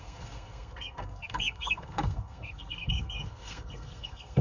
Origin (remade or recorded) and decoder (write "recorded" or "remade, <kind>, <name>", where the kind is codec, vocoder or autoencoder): remade, codec, SNAC